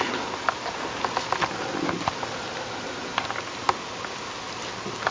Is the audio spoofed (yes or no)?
no